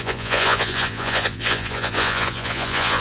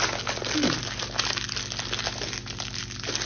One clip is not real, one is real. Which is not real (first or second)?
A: first